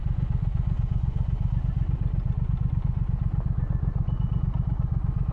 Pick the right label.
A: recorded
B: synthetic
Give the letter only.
B